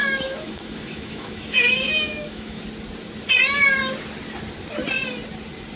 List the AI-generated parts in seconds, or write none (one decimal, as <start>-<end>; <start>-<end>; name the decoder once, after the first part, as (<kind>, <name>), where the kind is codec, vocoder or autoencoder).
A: 0.0-2.6 (autoencoder, DAC-VAE)